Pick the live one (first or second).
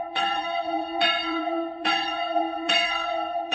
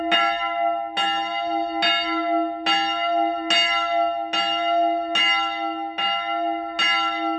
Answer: second